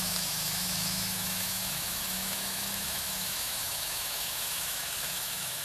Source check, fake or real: fake